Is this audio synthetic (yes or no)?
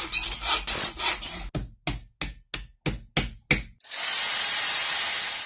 no